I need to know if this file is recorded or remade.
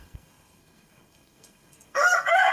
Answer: remade